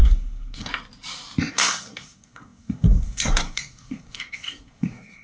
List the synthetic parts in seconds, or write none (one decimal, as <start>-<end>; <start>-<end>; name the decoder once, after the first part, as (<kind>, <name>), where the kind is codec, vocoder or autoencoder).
0.0-0.7 (codec, SNAC); 1.5-5.2